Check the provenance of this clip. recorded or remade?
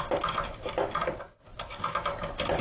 recorded